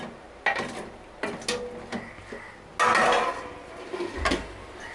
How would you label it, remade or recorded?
recorded